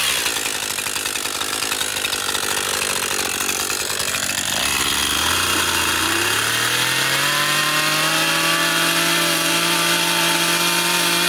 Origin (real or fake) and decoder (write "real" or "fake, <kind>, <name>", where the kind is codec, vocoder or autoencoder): real